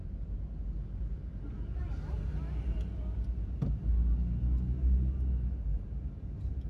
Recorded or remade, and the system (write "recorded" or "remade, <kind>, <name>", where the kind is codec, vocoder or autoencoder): recorded